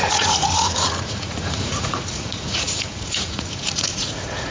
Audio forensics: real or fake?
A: fake